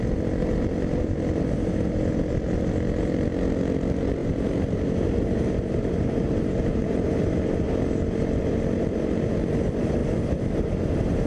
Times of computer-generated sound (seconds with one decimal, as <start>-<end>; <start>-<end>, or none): 4.2-7.6